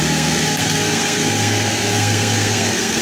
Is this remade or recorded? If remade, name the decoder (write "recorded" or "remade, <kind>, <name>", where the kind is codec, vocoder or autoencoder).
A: remade, codec, SNAC